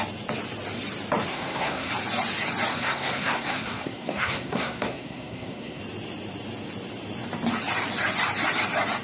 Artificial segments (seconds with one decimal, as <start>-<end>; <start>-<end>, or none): 1.3-1.9; 2.7-5.8